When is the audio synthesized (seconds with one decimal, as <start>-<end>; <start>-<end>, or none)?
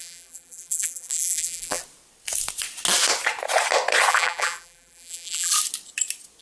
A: 0.0-1.8; 4.1-5.5